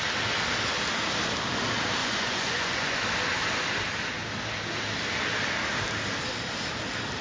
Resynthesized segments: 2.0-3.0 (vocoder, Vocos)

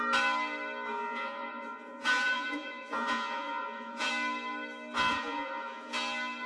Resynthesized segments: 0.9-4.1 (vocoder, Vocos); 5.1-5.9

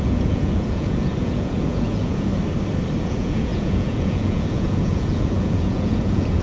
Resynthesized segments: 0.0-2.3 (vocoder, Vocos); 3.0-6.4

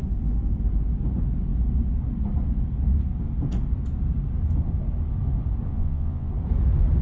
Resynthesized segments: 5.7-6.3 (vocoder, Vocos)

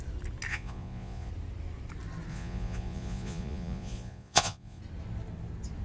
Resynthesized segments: 0.5-1.3 (vocoder, Vocos); 2.3-4.8

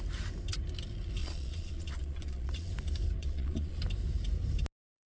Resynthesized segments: 1.2-2.7 (vocoder, Vocos); 3.2-3.8